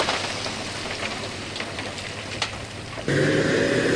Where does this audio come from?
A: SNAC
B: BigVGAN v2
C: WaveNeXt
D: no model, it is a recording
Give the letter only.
D